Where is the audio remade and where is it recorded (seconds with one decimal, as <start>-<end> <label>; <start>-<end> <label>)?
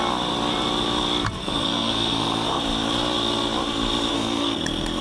0.0-1.4 recorded; 1.4-2.6 remade; 2.6-4.1 recorded; 4.1-5.0 remade